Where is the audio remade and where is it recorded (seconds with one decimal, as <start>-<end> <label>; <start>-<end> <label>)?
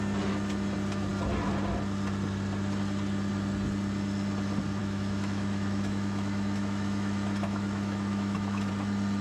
0.0-4.8 recorded; 4.8-8.7 remade; 8.7-9.2 recorded